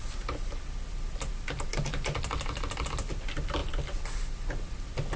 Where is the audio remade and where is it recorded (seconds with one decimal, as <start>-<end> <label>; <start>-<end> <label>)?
0.0-5.2 recorded